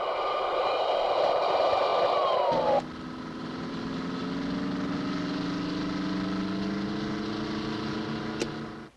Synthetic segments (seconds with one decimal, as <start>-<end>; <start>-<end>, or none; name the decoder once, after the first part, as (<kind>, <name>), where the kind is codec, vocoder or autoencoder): 0.0-1.9 (vocoder, BigVGAN v2); 3.2-4.2